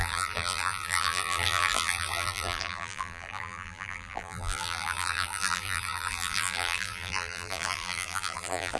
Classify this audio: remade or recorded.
remade